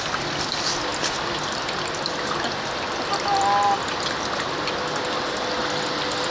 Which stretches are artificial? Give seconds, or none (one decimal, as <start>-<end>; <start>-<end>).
none